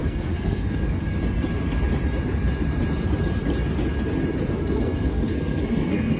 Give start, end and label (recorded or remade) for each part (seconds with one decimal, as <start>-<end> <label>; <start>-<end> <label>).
0.0-1.0 remade; 1.0-4.5 recorded; 4.5-6.2 remade